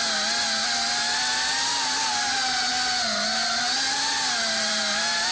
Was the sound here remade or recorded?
recorded